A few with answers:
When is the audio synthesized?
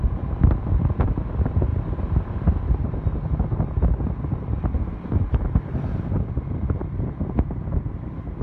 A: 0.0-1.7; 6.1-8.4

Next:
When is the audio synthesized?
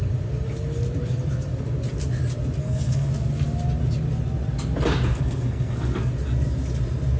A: 2.6-3.1; 5.1-6.1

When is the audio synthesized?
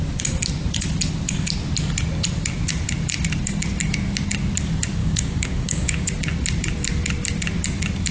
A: 5.0-6.1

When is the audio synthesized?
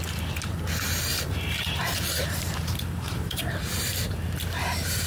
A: 1.1-3.4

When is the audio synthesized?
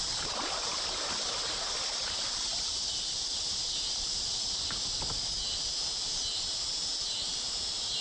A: none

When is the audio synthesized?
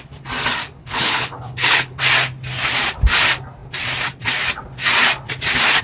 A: 0.8-2.0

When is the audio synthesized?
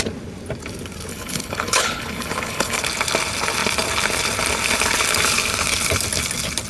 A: 1.1-2.8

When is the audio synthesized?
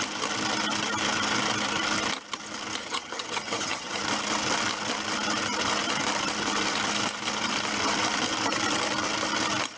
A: 2.8-4.0